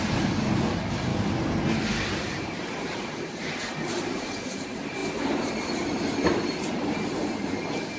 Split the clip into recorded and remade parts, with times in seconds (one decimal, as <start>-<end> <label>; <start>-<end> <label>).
0.0-1.1 remade; 1.1-2.2 recorded; 2.2-8.0 remade